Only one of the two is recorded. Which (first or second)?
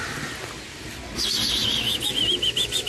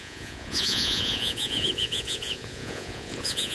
first